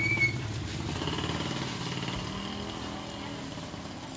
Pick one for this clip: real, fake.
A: real